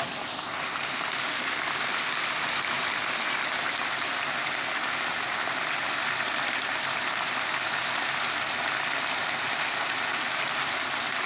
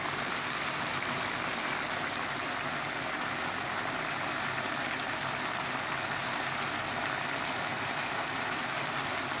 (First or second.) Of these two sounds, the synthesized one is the first